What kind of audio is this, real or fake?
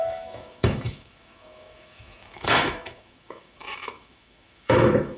fake